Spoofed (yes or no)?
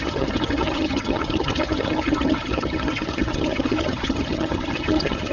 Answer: yes